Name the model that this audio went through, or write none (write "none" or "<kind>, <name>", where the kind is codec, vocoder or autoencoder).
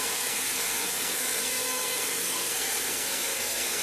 codec, SNAC